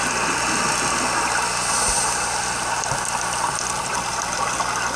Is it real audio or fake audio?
real